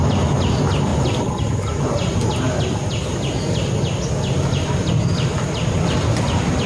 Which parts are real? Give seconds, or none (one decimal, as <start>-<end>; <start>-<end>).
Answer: 0.0-6.7